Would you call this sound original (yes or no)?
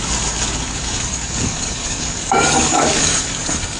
no